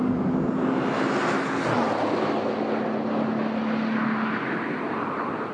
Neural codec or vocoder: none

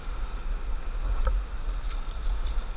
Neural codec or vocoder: none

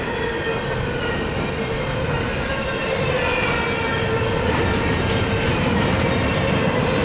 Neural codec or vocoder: none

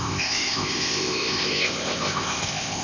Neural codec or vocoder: codec, ZipCodec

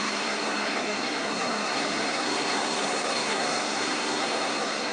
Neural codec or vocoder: codec, SNAC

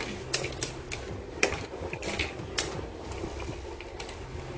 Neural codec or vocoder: none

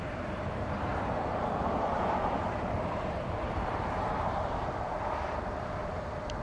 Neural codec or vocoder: vocoder, BigVGAN v2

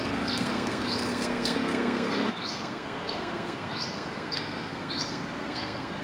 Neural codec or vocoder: codec, SNAC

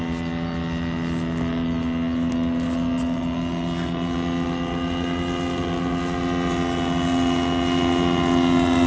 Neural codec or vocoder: none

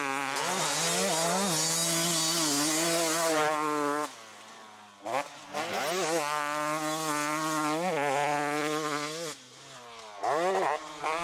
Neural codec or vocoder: none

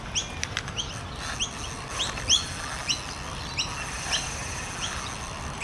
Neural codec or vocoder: none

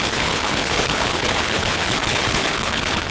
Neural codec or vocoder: codec, HILCodec